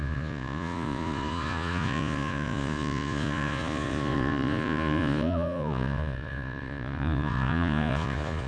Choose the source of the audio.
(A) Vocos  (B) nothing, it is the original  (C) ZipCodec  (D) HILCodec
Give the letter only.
A